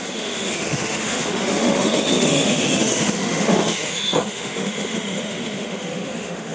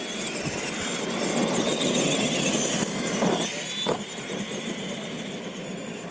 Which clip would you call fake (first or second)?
first